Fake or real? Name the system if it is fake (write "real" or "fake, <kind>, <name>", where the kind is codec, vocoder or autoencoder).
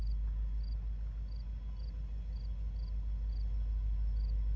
real